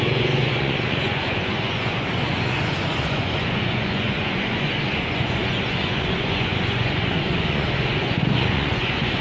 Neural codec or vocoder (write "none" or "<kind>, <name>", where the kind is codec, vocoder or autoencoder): vocoder, Vocos